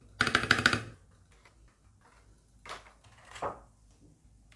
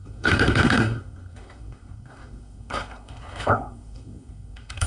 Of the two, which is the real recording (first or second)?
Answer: first